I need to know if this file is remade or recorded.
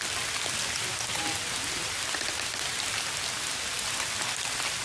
recorded